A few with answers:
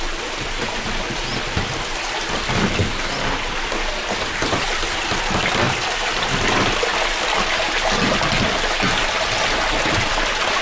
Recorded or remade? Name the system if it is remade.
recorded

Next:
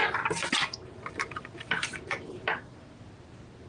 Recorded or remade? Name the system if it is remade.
recorded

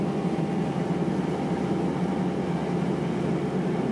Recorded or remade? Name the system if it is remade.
recorded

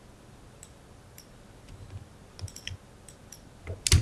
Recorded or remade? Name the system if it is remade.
recorded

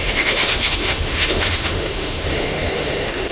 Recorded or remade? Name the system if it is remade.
remade, autoencoder, DAC-VAE